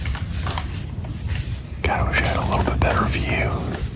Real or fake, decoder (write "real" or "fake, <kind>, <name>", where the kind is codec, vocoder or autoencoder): real